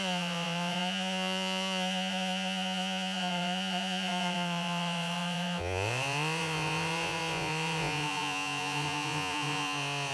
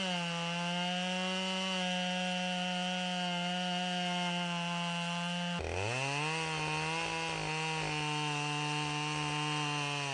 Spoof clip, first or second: first